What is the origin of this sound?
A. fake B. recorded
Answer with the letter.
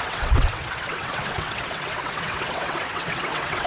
A